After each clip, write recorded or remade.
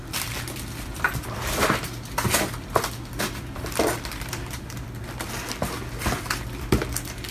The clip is remade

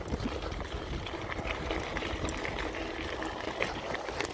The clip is recorded